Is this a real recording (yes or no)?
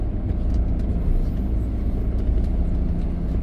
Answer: yes